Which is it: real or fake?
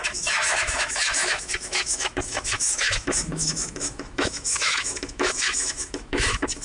fake